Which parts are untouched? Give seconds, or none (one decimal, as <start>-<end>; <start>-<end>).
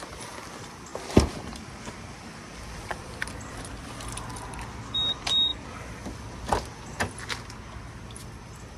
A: 0.0-0.9; 3.6-8.8